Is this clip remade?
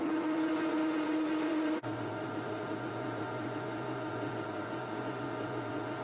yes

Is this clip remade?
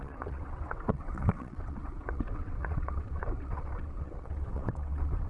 yes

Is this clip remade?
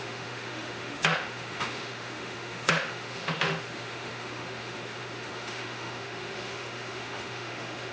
yes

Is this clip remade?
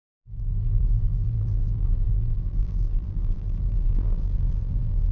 yes